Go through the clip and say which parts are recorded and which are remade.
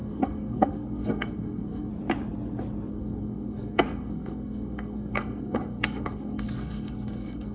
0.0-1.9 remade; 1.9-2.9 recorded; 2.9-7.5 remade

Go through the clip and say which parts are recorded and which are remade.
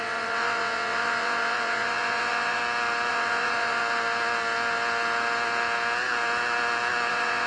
0.0-2.6 remade; 2.6-3.1 recorded; 3.1-3.8 remade; 3.8-7.1 recorded; 7.1-7.5 remade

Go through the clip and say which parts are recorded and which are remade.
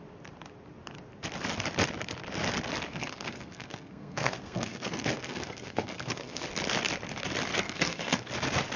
0.0-2.9 recorded; 2.9-6.4 remade; 6.4-7.5 recorded; 7.5-8.3 remade; 8.3-8.8 recorded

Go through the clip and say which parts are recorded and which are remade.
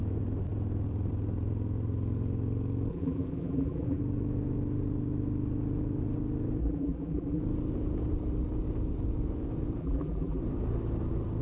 0.0-2.9 recorded; 2.9-4.0 remade; 4.0-6.6 recorded; 6.6-7.4 remade; 7.4-9.8 recorded; 9.8-10.4 remade; 10.4-11.4 recorded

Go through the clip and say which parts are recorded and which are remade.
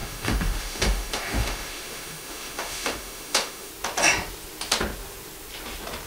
0.0-3.7 remade; 3.7-6.1 recorded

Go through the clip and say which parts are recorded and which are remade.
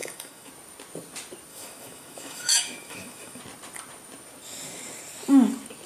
0.0-0.5 remade; 0.5-1.5 recorded; 1.5-3.4 remade; 3.4-5.9 recorded